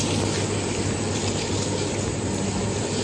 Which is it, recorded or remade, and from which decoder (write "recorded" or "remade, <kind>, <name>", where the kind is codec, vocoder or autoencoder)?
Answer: recorded